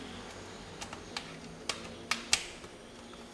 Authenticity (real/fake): real